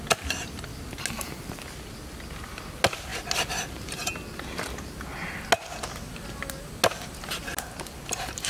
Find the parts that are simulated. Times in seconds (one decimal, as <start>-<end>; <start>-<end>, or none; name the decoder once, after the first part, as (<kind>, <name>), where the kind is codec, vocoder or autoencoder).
none